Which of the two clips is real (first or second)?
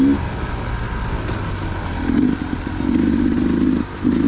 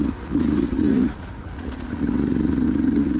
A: first